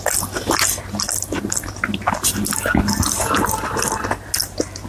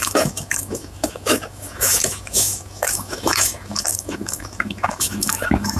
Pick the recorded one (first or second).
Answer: first